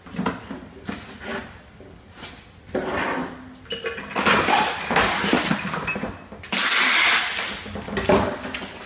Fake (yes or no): no